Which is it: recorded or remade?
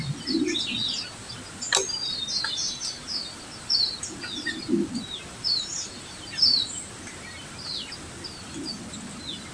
recorded